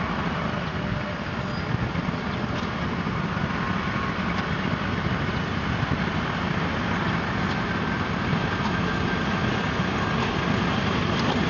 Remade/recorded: recorded